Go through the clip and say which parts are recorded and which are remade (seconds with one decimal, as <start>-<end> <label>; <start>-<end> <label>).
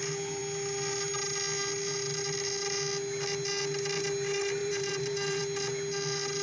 0.0-4.6 recorded; 4.6-5.4 remade; 5.4-6.4 recorded